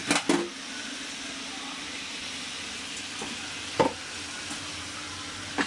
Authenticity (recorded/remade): recorded